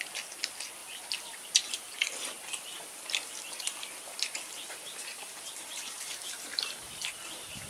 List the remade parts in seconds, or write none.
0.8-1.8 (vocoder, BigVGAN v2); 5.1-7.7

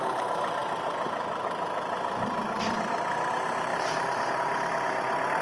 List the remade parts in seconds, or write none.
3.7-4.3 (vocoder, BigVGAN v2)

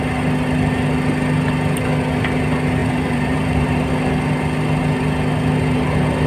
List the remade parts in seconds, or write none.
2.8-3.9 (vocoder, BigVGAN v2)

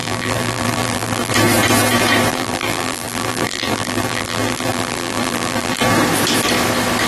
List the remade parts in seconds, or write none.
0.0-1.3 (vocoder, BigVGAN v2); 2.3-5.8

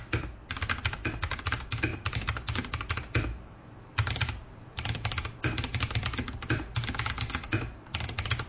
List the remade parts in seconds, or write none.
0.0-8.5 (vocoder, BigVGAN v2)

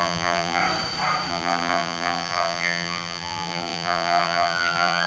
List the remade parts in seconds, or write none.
0.0-0.6 (vocoder, BigVGAN v2); 1.3-5.1